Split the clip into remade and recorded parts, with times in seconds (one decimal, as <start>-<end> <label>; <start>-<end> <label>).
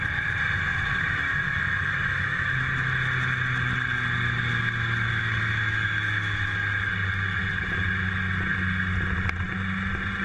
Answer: 0.0-0.7 recorded; 0.7-2.7 remade; 2.7-5.1 recorded; 5.1-6.9 remade; 6.9-10.2 recorded